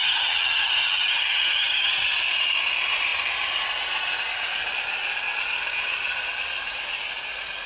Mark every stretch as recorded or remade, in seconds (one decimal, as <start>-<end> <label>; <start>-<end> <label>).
0.0-1.9 remade; 1.9-7.7 recorded